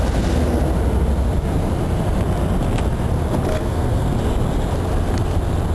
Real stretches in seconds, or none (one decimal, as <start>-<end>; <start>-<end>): 0.0-3.5; 4.2-5.7